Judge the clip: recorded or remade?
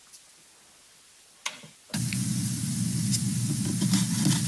recorded